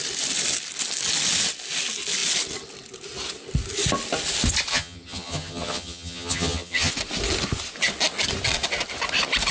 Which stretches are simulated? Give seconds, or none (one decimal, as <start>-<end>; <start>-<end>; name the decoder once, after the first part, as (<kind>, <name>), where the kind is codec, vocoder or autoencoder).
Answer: 4.7-6.9 (vocoder, HiFi-GAN)